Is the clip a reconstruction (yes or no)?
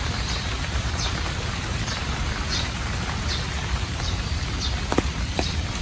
yes